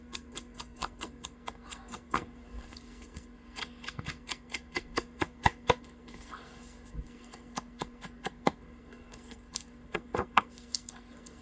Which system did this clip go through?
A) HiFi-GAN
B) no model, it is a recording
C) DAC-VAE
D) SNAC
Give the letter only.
D